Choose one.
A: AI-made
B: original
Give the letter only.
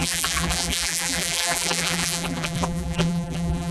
A